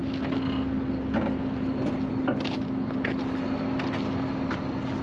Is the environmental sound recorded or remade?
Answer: recorded